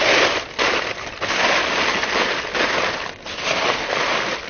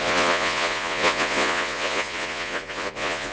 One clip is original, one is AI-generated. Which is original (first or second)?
first